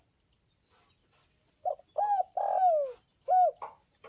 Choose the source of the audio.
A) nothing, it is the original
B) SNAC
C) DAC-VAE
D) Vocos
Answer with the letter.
A